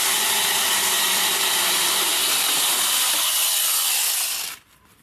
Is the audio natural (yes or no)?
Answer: yes